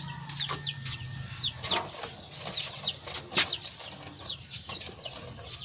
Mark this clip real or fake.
real